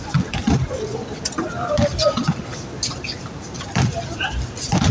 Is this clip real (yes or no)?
yes